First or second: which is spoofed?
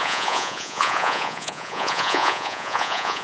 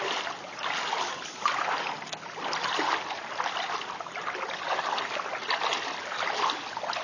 first